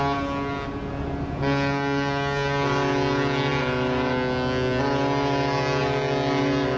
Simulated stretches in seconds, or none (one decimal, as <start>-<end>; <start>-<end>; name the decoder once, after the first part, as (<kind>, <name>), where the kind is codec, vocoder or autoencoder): none

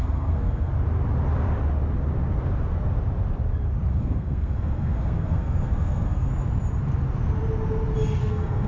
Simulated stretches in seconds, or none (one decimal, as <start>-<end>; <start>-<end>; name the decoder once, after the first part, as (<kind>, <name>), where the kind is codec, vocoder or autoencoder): 0.0-0.7 (codec, SNAC); 3.9-6.3; 8.2-8.7

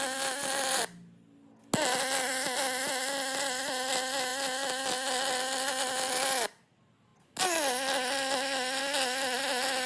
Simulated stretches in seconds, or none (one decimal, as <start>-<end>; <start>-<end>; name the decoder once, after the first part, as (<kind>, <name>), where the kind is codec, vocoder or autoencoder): none

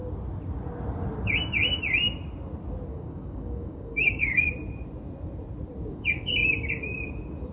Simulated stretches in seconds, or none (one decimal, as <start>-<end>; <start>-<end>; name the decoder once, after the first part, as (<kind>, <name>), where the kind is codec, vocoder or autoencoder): 2.9-4.5 (codec, DAC)

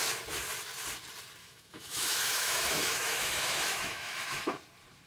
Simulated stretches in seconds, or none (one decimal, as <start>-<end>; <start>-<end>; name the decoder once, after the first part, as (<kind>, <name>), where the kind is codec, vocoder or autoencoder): 1.4-4.5 (autoencoder, DAC-VAE)

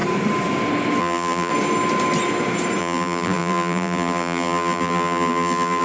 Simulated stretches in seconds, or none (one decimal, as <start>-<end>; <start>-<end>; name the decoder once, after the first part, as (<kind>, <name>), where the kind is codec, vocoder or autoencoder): 1.0-1.5 (vocoder, BigVGAN v2); 2.8-5.8

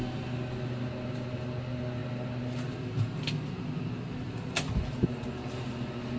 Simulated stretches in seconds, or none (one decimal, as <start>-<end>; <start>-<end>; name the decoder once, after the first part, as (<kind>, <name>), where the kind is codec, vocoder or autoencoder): none